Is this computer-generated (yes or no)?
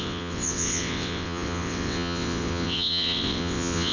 yes